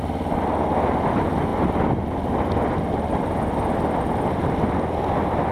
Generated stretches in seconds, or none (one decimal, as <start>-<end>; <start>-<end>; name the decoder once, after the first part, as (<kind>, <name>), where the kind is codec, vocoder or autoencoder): none